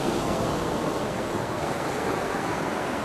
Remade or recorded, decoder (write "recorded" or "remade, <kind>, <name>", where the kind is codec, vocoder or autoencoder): remade, codec, SNAC